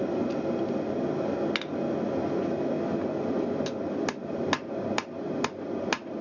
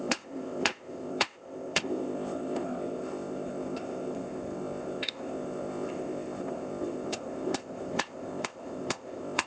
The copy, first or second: second